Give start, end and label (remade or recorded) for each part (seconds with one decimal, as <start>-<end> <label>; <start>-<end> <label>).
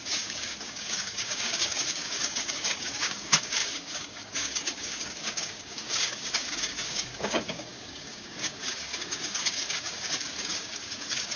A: 0.0-11.4 remade